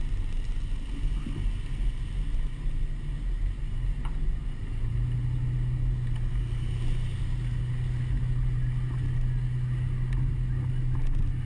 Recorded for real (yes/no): yes